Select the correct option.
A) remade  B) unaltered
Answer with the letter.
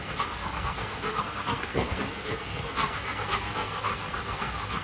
A